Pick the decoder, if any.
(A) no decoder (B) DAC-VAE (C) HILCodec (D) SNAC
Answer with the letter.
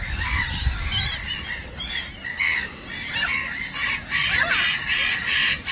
A